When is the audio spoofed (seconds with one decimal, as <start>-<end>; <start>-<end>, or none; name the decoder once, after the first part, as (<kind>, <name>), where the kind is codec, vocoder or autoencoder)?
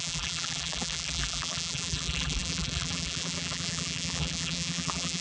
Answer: 0.0-5.2 (vocoder, BigVGAN v2)